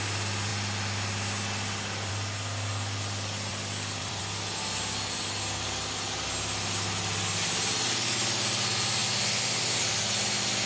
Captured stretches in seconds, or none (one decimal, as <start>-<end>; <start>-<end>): 0.0-3.5; 4.2-10.7